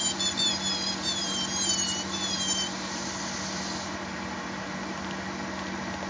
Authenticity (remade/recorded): recorded